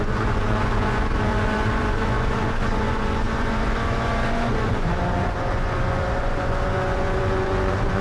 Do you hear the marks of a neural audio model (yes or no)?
yes